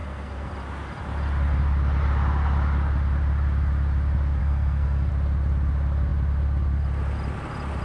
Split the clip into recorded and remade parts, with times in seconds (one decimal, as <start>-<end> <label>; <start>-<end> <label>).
0.0-0.5 remade; 0.5-4.4 recorded; 4.4-5.1 remade; 5.1-7.8 recorded